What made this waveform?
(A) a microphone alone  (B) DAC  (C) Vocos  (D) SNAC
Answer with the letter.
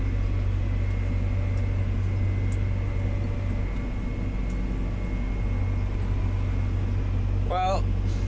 A